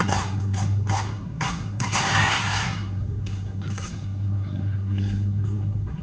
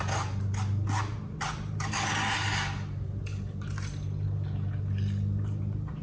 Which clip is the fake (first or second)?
first